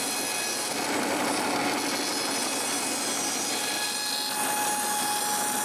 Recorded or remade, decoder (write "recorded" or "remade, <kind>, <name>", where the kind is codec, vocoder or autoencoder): recorded